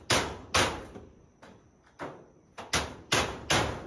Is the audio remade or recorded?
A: recorded